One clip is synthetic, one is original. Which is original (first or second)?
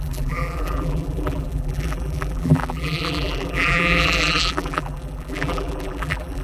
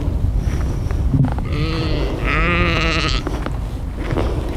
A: second